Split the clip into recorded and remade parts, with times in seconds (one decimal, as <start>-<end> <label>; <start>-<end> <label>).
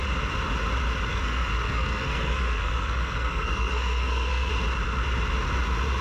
0.0-1.1 recorded; 1.1-4.5 remade; 4.5-6.0 recorded